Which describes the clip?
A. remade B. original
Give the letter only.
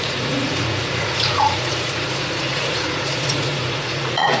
A